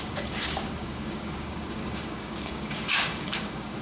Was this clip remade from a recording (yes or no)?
yes